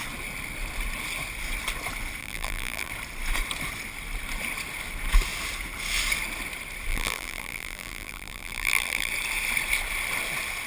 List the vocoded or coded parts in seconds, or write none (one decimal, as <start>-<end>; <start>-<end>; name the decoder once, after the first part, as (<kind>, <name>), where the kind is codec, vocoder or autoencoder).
2.2-2.9 (vocoder, BigVGAN v2); 6.9-9.1